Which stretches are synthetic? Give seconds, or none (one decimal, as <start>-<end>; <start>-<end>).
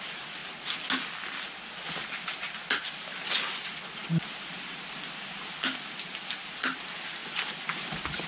none